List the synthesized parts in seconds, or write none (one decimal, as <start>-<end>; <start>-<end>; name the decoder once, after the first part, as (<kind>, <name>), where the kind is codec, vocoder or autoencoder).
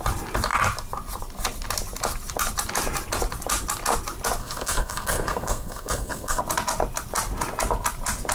4.4-6.4 (codec, SNAC)